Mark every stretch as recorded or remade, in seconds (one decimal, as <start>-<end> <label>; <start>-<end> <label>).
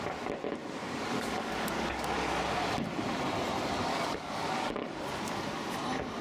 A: 0.0-0.6 recorded; 0.6-2.4 remade; 2.4-3.9 recorded; 3.9-5.4 remade; 5.4-6.2 recorded